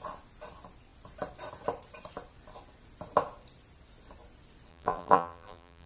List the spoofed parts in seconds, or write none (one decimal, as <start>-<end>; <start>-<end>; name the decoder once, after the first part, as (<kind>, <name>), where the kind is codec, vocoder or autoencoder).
4.7-5.9 (vocoder, BigVGAN v2)